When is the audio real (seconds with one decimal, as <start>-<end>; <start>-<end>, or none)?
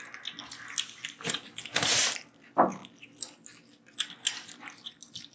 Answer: 0.0-5.3